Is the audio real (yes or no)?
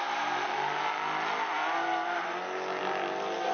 yes